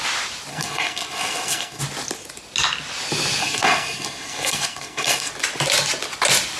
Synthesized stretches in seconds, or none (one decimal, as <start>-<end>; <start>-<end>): 0.5-1.8; 3.4-5.3